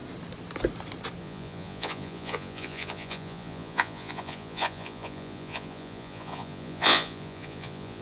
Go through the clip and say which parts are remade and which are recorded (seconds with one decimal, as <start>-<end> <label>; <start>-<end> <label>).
0.0-1.2 recorded; 1.2-8.0 remade